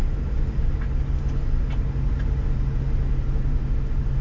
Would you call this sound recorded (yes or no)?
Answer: yes